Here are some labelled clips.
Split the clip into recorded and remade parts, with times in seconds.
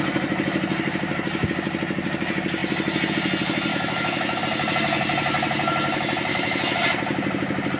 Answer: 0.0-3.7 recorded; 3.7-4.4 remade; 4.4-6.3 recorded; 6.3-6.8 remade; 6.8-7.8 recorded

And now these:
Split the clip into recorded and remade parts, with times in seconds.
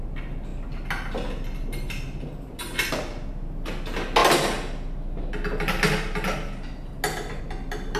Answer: 0.0-8.0 recorded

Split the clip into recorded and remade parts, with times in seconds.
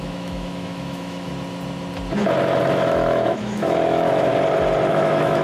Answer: 0.0-1.3 remade; 1.3-2.6 recorded; 2.6-4.3 remade; 4.3-4.9 recorded; 4.9-5.4 remade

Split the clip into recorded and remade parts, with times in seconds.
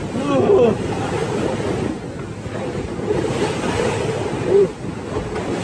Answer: 0.0-5.6 recorded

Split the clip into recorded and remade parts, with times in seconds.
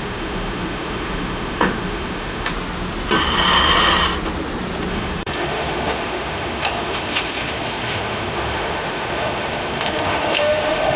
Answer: 0.0-2.5 remade; 2.5-4.9 recorded; 4.9-11.0 remade